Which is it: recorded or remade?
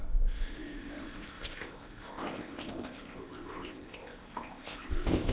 remade